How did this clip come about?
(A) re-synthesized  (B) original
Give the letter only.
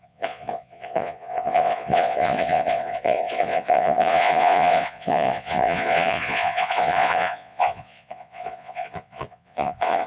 A